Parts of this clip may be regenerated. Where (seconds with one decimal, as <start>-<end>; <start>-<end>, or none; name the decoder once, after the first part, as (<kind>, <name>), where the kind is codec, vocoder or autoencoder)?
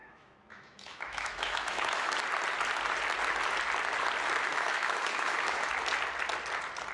0.0-2.1 (autoencoder, DAC-VAE); 4.5-5.7